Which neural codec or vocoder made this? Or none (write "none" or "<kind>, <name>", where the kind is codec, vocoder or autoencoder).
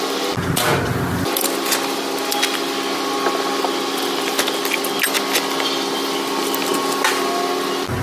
none